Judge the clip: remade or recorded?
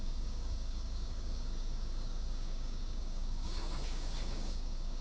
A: remade